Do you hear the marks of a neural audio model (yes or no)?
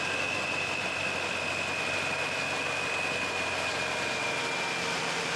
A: no